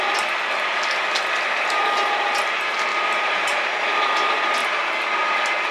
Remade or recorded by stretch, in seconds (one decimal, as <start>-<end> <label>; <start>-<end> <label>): 0.0-2.9 recorded; 2.9-3.7 remade; 3.7-5.7 recorded